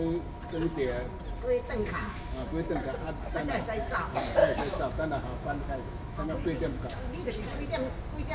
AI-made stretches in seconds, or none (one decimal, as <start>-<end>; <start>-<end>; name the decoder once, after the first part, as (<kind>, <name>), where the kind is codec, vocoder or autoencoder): 1.8-2.7 (autoencoder, DAC-VAE); 4.4-7.3